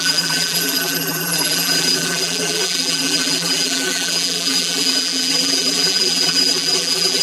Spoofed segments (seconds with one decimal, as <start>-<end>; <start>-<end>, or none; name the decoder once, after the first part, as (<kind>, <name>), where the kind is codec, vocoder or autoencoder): 0.0-7.2 (vocoder, BigVGAN v2)